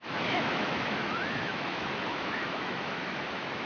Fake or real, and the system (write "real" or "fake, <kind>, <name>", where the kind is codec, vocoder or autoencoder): fake, autoencoder, DAC-VAE